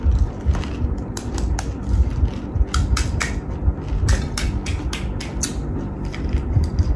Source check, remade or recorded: recorded